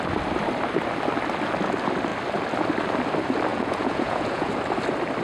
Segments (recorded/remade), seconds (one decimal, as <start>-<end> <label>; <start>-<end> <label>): 0.0-3.5 recorded; 3.5-4.5 remade; 4.5-5.2 recorded